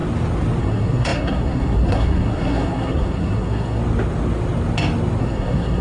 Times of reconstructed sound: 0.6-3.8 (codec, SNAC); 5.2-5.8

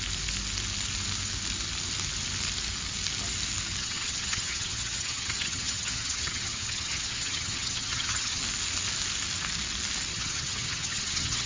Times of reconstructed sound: 3.8-8.4 (vocoder, HiFi-GAN); 10.1-11.5

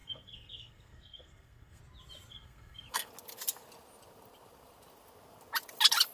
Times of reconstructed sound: 0.0-1.8 (codec, SNAC); 2.3-3.1

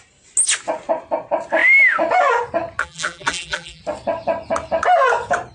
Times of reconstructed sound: 2.8-3.8 (vocoder, BigVGAN v2)

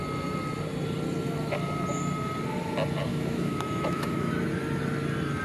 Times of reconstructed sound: 3.1-4.3 (autoencoder, DAC-VAE)

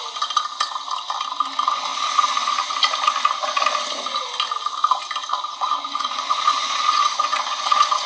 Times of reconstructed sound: 5.3-8.1 (vocoder, Vocos)

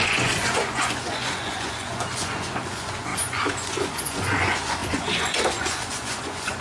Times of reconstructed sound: 0.0-6.6 (vocoder, Vocos)

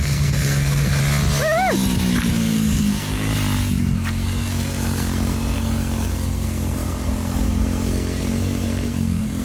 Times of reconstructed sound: 0.0-1.0 (codec, SNAC); 2.3-3.3; 3.8-9.4